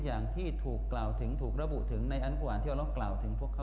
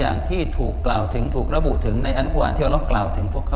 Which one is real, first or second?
first